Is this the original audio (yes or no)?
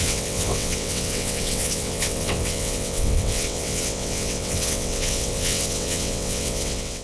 no